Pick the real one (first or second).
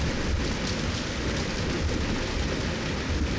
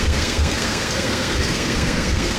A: first